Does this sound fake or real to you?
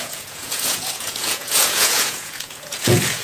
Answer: fake